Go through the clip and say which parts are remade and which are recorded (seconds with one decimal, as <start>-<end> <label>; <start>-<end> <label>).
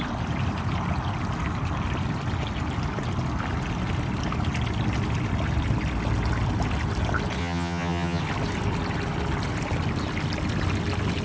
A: 0.0-7.4 recorded; 7.4-8.2 remade; 8.2-11.2 recorded